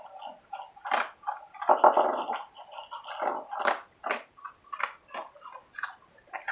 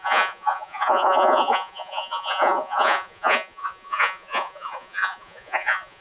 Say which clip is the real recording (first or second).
first